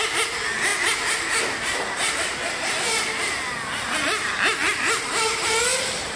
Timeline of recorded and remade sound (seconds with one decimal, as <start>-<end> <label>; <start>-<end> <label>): 0.0-6.2 recorded